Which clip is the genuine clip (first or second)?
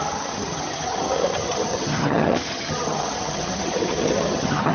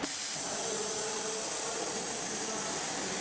second